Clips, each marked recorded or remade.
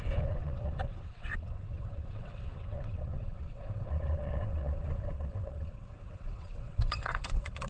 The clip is remade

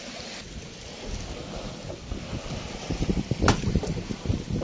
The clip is recorded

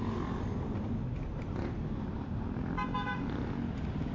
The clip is recorded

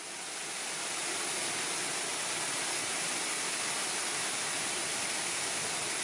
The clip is recorded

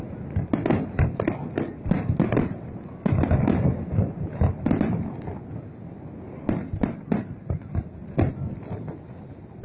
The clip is recorded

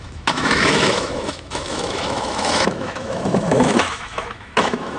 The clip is remade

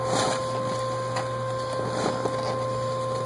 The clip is recorded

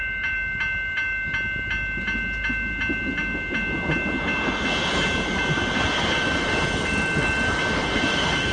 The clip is recorded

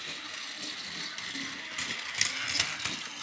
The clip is recorded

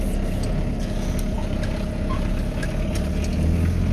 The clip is recorded